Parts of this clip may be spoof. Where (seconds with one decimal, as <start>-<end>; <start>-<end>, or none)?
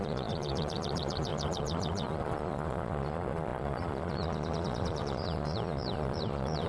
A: 0.0-6.7